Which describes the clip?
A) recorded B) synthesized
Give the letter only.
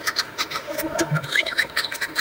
B